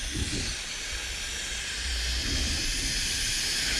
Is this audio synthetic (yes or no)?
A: no